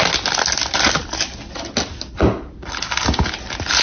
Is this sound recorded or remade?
recorded